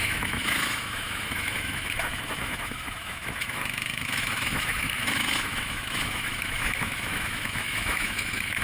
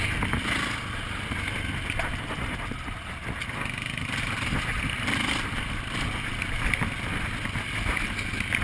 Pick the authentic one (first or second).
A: second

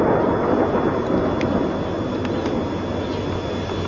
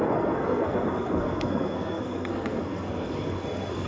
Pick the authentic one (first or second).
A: first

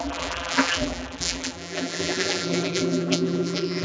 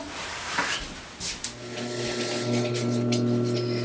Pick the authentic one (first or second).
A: second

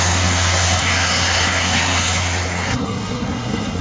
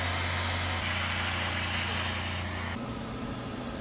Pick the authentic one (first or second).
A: second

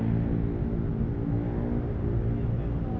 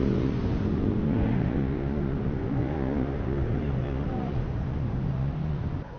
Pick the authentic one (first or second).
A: first